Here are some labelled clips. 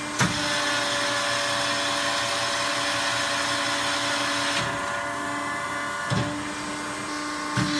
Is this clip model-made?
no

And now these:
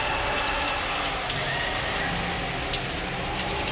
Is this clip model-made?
no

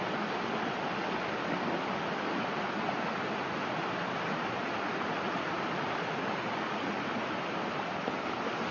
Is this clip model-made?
no